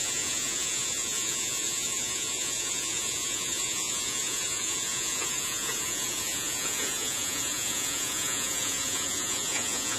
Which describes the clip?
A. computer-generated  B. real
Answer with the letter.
A